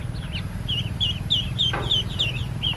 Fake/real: real